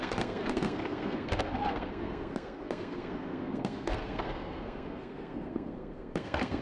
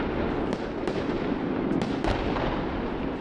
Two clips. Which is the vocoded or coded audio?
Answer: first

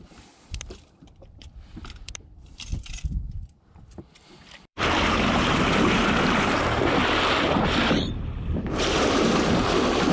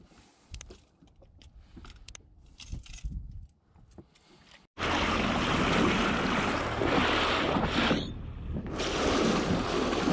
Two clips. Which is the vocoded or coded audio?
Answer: first